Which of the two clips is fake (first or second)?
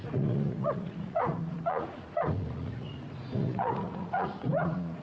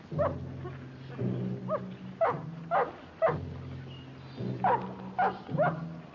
first